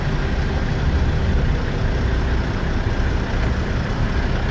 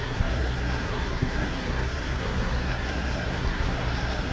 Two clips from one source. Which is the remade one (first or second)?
second